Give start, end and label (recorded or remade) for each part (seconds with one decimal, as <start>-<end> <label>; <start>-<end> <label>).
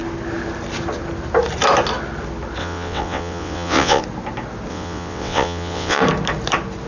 0.0-2.6 recorded; 2.6-4.0 remade; 4.0-4.7 recorded; 4.7-6.0 remade; 6.0-6.9 recorded